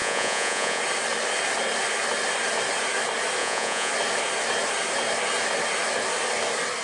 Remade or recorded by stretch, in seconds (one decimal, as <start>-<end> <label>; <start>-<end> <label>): 0.0-0.8 remade; 0.8-3.4 recorded; 3.4-3.9 remade; 3.9-6.8 recorded